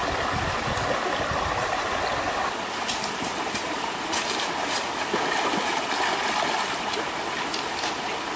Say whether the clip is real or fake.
real